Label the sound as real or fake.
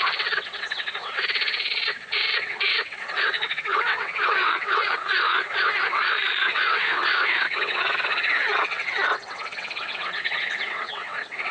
fake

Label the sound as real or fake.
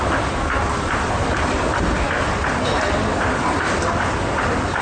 real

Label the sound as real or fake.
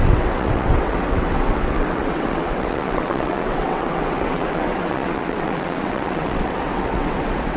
fake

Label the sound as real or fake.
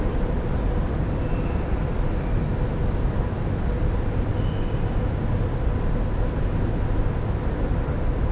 real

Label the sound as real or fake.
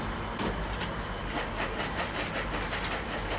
real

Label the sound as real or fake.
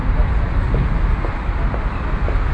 real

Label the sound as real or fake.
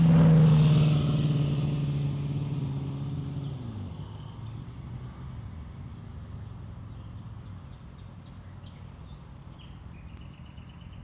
real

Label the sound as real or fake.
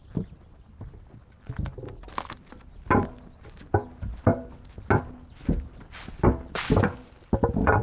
real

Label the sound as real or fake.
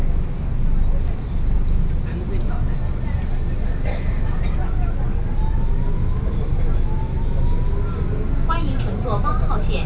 real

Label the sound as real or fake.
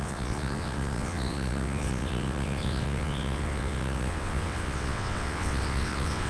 fake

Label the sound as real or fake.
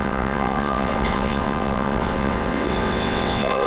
fake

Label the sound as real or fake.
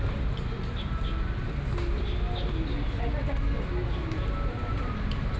real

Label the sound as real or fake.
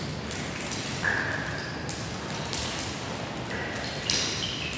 real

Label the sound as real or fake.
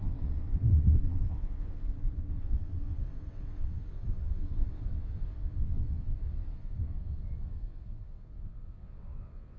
fake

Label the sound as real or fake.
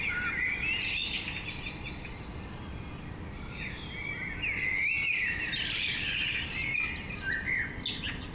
real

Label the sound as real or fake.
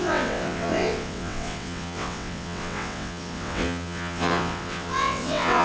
fake